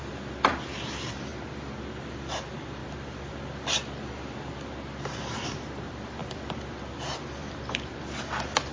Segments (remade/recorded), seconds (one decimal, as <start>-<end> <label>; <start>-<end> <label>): 0.0-1.3 remade; 1.3-2.4 recorded; 2.4-2.8 remade; 2.8-5.1 recorded; 5.1-8.7 remade